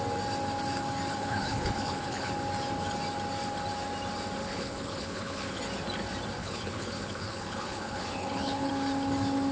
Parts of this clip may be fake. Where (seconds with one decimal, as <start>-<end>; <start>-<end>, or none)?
1.1-2.3; 4.4-5.6; 6.4-8.7